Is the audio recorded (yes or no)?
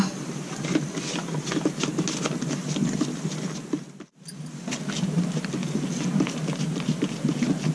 yes